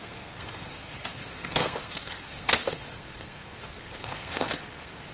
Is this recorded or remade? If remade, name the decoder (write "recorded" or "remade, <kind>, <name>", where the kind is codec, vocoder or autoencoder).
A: remade, codec, SNAC